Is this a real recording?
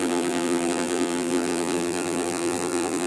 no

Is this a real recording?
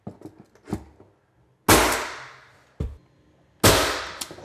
yes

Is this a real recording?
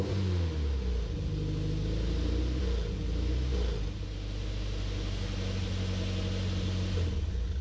yes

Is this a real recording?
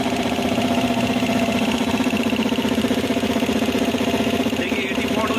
no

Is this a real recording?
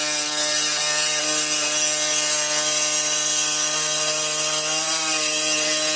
yes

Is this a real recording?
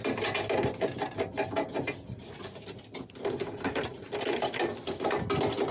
yes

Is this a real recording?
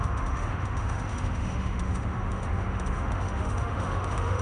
no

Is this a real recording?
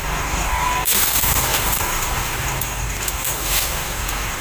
no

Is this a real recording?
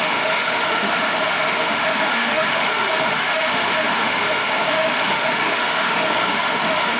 no